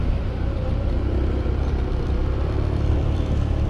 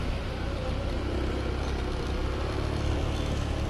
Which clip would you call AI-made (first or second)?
first